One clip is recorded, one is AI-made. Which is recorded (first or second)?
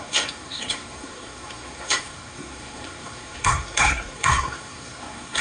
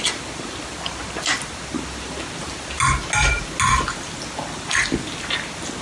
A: second